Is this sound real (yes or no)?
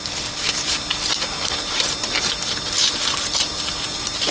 yes